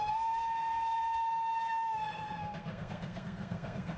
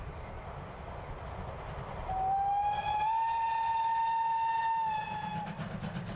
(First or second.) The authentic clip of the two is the second